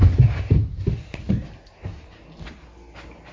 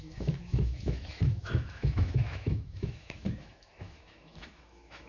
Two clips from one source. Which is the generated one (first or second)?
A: second